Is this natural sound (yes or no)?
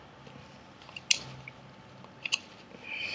yes